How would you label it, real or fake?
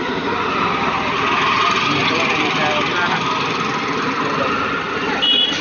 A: real